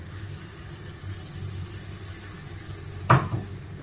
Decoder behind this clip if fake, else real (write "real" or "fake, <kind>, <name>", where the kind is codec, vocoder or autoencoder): real